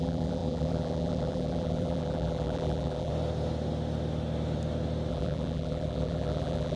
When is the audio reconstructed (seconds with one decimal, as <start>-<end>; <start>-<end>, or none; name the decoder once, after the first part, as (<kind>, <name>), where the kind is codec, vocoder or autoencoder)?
0.0-3.1 (vocoder, BigVGAN v2); 5.1-6.8